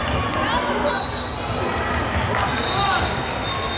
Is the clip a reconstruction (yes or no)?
no